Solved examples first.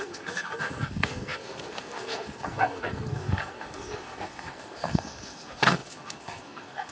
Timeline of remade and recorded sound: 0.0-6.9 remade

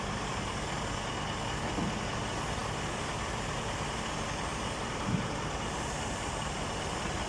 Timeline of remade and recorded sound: 0.0-4.5 recorded; 4.5-6.3 remade; 6.3-7.3 recorded